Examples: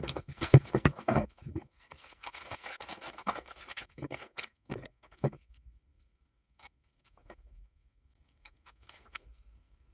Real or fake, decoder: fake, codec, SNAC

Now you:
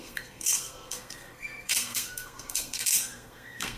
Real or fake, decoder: fake, codec, SNAC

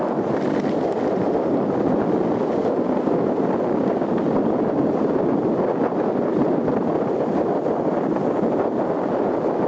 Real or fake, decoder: real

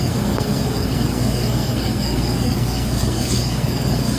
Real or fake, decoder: fake, codec, SNAC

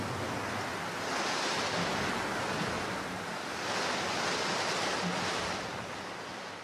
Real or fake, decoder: real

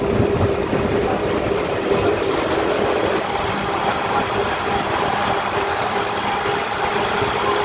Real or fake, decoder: real